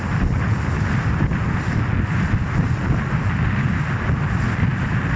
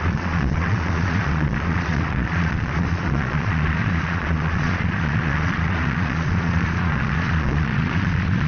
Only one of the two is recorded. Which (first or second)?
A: first